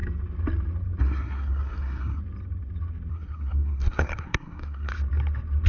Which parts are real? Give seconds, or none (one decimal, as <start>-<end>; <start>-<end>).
0.0-1.0; 2.2-3.1; 4.9-5.7